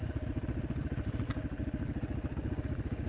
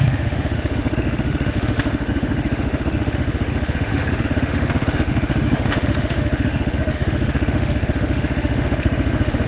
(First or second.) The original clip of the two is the first